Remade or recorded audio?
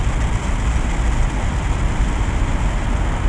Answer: recorded